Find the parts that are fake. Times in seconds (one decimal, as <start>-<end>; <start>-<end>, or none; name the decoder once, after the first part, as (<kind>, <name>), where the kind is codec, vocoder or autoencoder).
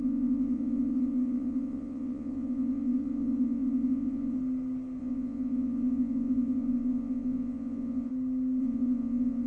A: 0.0-4.4 (vocoder, Vocos); 5.0-8.1; 8.6-9.5